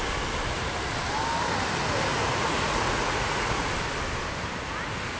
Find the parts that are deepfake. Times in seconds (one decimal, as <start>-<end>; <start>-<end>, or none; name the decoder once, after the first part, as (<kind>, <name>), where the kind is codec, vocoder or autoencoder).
2.1-3.7 (vocoder, Vocos)